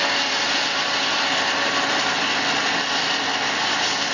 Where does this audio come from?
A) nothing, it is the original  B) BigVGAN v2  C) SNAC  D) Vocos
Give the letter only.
A